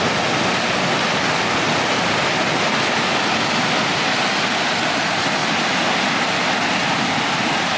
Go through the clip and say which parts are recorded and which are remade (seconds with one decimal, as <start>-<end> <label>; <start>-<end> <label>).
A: 0.0-7.8 recorded